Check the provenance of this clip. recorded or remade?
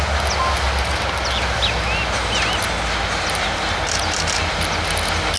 recorded